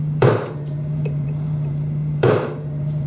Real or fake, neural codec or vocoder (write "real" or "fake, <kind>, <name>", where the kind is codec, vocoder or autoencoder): fake, vocoder, BigVGAN v2